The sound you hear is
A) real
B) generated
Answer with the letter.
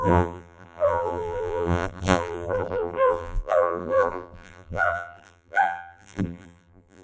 B